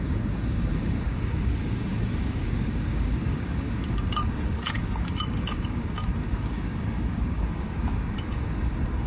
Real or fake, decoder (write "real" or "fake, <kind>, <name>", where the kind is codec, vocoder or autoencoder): fake, codec, DAC